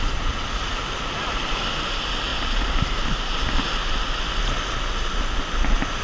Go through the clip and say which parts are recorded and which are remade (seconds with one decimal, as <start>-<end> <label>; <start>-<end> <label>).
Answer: 0.0-6.0 recorded